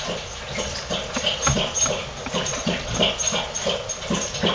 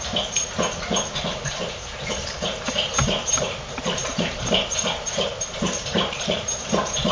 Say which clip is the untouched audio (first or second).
first